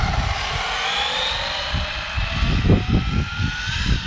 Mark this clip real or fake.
real